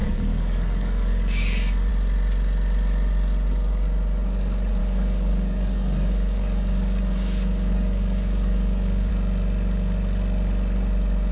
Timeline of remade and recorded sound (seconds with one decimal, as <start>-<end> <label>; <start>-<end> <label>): 0.0-1.9 remade; 1.9-4.8 recorded; 4.8-9.1 remade; 9.1-11.3 recorded